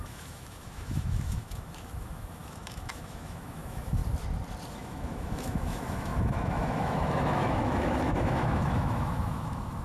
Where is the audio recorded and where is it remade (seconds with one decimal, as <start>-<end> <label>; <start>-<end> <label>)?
0.0-4.0 remade; 4.0-4.7 recorded; 4.7-9.8 remade